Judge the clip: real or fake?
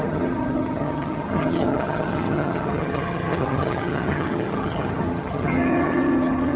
fake